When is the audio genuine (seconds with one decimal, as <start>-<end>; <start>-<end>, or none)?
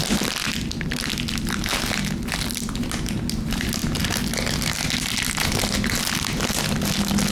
0.0-7.3